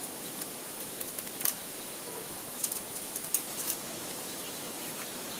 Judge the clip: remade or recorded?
remade